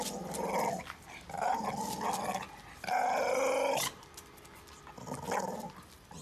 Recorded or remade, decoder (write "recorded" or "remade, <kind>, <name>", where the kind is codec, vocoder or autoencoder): recorded